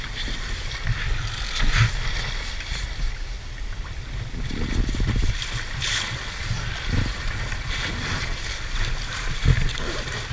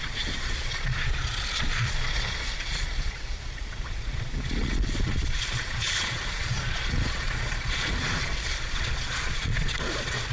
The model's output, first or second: second